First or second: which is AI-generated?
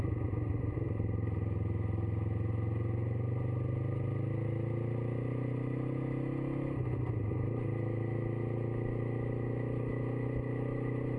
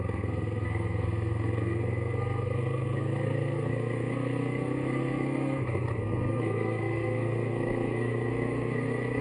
second